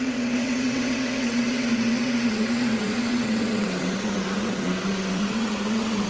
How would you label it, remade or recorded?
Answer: remade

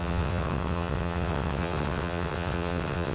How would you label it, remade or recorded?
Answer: remade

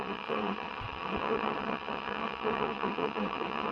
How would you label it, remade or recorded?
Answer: remade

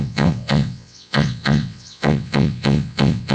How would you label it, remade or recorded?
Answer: remade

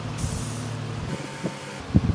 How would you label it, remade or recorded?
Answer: recorded